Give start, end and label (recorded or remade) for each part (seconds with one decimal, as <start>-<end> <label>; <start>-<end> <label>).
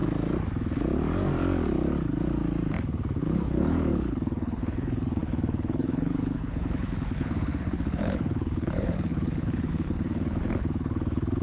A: 0.0-3.2 recorded; 3.2-11.4 remade